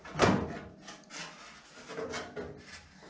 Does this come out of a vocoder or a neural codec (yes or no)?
no